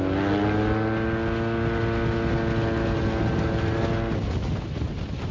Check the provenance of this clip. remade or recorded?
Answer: recorded